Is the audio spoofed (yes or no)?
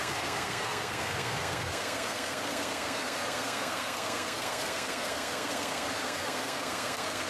yes